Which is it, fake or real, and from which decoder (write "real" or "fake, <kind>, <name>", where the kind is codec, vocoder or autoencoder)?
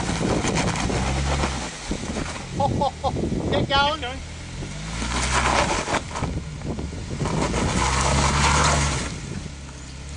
real